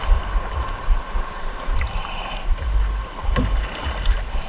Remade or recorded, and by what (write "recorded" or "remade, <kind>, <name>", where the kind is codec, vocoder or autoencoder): recorded